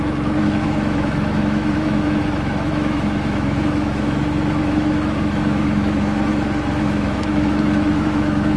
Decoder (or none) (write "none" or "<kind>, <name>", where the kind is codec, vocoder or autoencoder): autoencoder, DAC-VAE